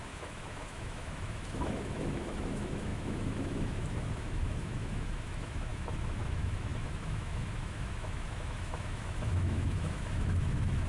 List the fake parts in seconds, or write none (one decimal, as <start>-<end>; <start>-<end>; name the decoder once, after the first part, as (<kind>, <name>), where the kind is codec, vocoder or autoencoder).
0.0-10.9 (autoencoder, DAC-VAE)